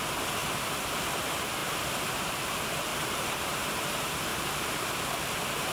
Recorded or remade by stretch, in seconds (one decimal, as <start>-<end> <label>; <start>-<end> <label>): 0.0-2.9 recorded; 2.9-3.7 remade; 3.7-4.3 recorded; 4.3-5.7 remade